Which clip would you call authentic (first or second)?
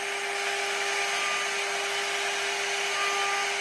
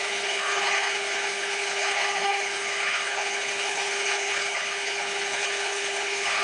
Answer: first